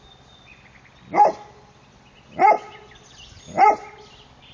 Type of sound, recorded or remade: recorded